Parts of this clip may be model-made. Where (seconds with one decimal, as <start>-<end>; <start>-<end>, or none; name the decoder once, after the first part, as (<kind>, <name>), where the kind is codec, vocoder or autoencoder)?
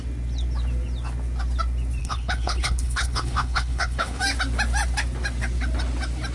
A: 2.0-4.2 (codec, HILCodec)